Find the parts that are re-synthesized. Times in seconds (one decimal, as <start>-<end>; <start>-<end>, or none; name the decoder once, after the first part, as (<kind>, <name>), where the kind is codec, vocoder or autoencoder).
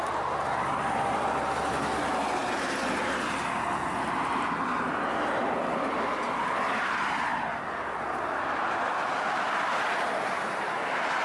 none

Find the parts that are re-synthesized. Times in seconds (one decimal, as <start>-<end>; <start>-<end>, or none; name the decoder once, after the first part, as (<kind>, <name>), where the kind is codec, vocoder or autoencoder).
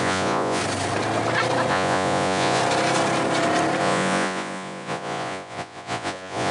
0.0-0.6 (vocoder, Vocos); 1.7-2.6; 3.8-6.5